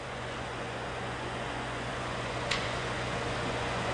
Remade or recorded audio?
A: remade